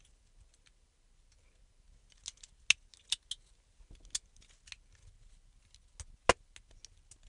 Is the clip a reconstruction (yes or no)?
no